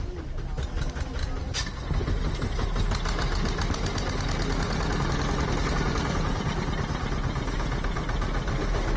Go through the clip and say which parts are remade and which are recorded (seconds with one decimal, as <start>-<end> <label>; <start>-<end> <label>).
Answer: 0.0-9.0 recorded